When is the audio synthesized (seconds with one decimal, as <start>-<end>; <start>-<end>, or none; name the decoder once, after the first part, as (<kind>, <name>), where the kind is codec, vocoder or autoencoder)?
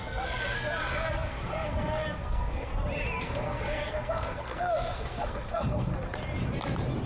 0.0-2.7 (codec, SNAC); 3.2-5.9